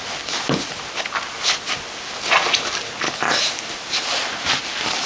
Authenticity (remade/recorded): recorded